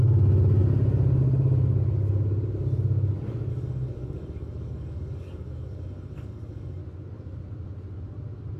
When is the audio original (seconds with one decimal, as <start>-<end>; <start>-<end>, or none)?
0.0-3.5; 6.8-8.6